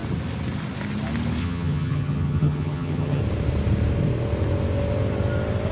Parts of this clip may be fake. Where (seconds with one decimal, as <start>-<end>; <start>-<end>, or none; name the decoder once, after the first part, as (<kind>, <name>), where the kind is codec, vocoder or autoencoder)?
1.4-3.2 (vocoder, HiFi-GAN)